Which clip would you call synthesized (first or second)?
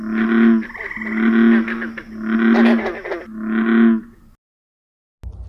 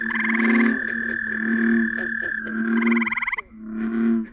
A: second